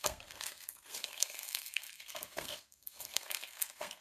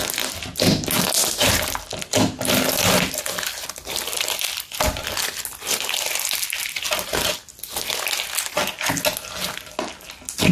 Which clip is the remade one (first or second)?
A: first